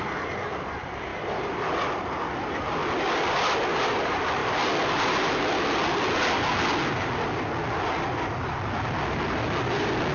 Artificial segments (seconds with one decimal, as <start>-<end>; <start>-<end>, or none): none